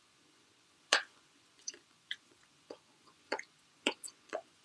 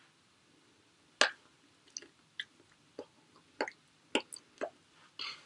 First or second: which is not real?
first